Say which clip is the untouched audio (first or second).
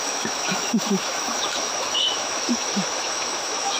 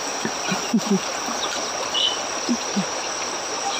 second